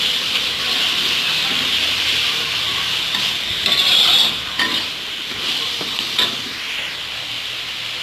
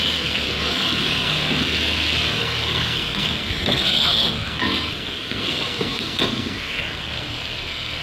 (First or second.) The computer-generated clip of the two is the second